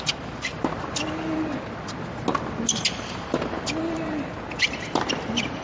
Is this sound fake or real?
real